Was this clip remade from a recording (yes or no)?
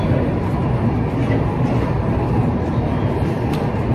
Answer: no